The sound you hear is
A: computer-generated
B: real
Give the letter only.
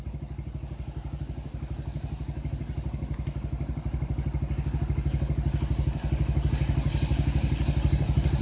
B